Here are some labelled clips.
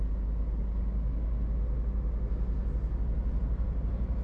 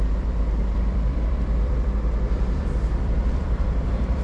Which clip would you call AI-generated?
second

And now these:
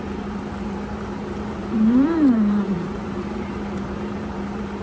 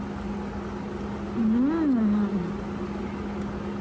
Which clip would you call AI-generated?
first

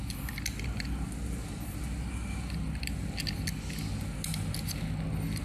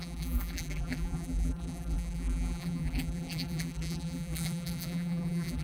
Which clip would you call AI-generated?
second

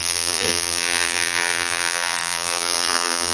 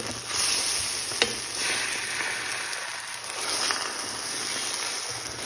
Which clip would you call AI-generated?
first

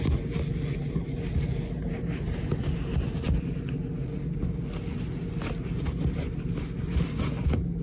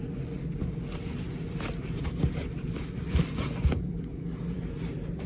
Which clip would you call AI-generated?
second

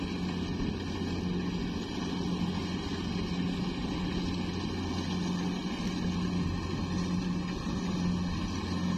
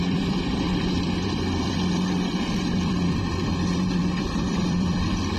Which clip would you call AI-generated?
second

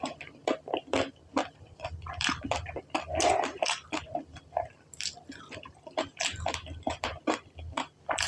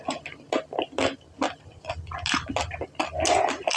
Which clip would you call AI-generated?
first